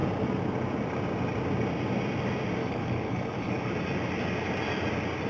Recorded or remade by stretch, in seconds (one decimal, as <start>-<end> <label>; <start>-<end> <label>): 0.0-2.6 recorded; 2.6-3.7 remade; 3.7-5.3 recorded